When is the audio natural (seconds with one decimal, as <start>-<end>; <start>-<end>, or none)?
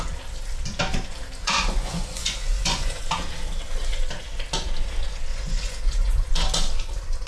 0.0-1.4; 3.0-5.3; 6.3-7.3